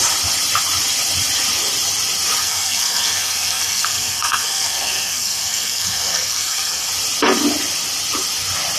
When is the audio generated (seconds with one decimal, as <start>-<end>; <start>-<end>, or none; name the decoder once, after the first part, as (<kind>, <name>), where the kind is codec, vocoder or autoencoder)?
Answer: 2.4-6.9 (codec, SNAC)